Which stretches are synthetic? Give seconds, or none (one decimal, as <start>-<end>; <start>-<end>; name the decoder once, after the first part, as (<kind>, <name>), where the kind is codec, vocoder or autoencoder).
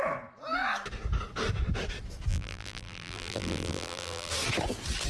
2.3-4.3 (vocoder, BigVGAN v2)